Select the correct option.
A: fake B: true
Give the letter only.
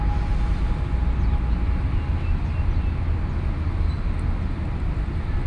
B